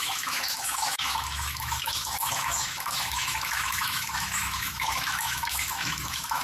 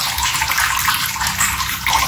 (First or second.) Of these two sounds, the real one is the second